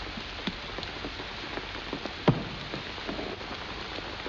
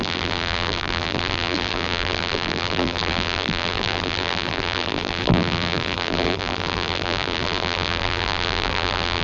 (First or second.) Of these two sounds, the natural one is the first